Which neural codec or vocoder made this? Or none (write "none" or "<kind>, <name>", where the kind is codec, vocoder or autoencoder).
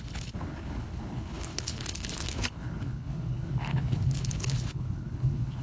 codec, HILCodec